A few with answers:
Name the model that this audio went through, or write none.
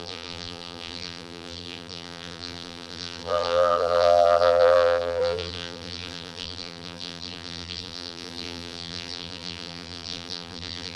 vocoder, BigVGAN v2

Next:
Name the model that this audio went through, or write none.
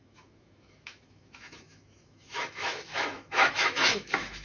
autoencoder, DAC-VAE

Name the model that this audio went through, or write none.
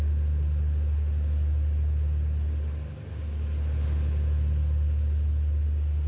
none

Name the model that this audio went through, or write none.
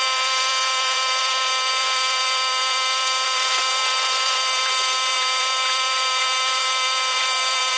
vocoder, BigVGAN v2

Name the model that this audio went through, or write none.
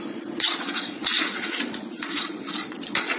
vocoder, Vocos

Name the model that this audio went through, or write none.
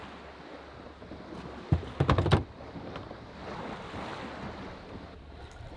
none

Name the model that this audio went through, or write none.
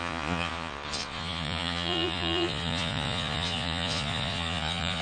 vocoder, Vocos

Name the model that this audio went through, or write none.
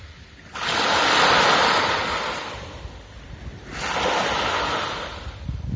none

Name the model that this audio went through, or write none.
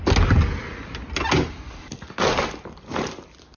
none